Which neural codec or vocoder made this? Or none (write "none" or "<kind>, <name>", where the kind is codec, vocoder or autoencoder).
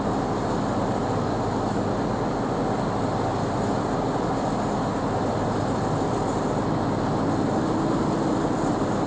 none